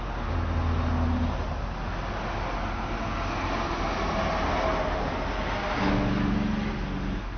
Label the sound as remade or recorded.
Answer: recorded